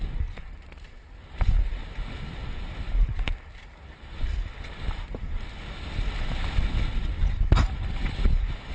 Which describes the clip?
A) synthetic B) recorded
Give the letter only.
B